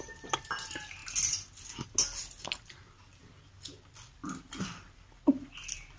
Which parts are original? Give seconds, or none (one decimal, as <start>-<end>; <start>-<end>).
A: 0.0-6.0